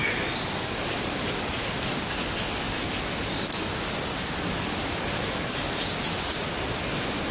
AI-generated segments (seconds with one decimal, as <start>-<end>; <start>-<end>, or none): none